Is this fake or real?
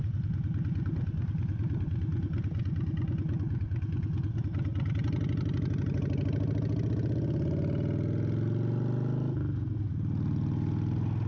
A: real